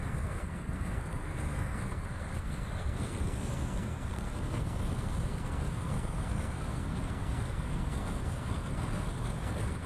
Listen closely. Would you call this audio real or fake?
fake